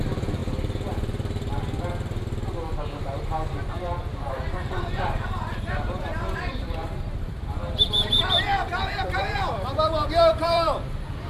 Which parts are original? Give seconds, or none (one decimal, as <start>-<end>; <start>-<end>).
0.4-4.3